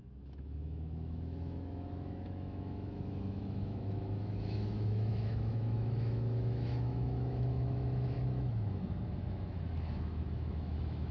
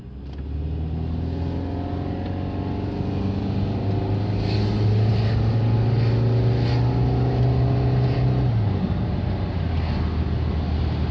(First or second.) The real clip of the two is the second